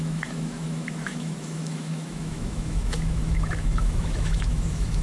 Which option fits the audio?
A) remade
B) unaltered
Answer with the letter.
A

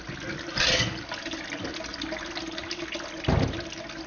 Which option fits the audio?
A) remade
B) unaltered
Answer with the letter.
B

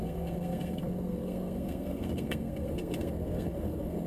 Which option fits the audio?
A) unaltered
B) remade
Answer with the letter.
B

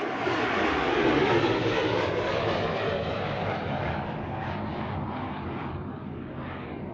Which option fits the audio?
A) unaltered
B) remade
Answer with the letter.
B